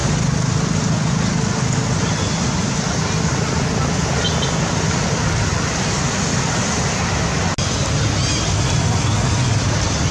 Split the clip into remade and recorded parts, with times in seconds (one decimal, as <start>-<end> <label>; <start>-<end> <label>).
0.0-10.1 recorded